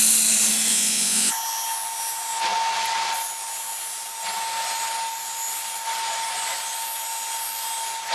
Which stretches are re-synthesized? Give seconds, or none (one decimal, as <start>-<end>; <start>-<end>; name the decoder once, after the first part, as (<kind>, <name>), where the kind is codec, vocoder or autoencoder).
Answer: 0.7-1.3 (vocoder, Vocos)